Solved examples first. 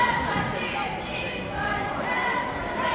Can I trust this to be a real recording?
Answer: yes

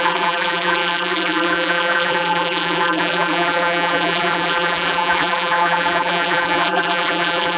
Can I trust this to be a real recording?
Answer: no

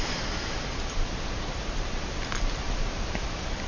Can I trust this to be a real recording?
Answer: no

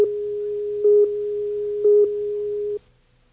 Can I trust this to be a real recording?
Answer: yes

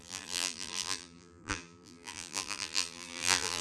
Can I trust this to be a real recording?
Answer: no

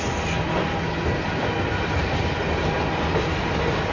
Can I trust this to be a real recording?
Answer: yes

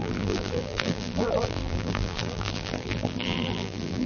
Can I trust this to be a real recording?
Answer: no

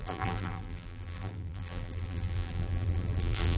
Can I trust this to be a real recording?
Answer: no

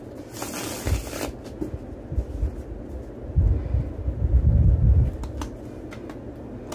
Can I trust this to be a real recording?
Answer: yes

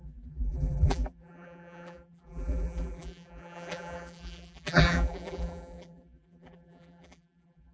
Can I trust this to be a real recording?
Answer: no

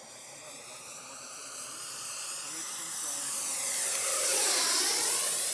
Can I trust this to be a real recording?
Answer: no